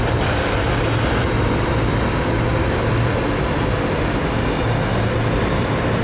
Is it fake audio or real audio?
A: real